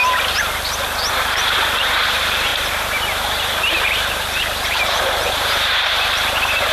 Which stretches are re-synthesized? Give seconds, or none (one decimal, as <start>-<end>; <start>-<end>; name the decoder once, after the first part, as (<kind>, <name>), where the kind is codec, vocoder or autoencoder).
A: 1.1-6.7 (vocoder, BigVGAN v2)